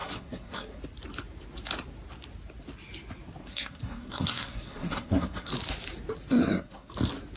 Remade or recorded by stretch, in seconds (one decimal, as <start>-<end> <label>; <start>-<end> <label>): 0.0-0.8 remade; 0.8-3.4 recorded; 3.4-5.5 remade; 5.5-6.4 recorded; 6.4-6.9 remade; 6.9-7.4 recorded